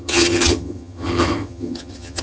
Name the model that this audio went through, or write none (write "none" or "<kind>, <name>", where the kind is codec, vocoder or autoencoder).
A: vocoder, HiFi-GAN